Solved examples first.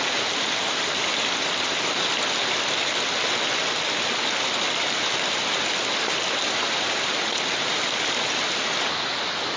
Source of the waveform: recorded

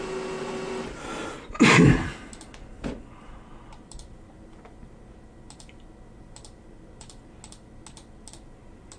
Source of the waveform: recorded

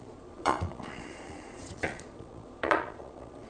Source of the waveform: remade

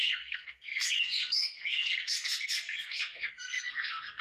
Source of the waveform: remade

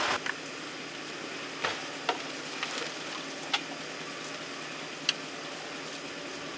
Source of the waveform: recorded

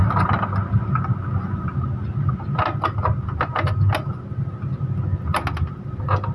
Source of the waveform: recorded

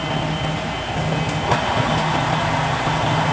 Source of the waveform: recorded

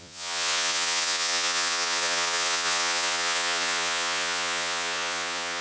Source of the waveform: remade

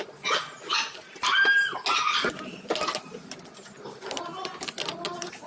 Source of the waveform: recorded